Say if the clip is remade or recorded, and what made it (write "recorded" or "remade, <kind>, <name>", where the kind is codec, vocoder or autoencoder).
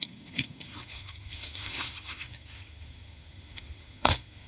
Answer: remade, codec, SNAC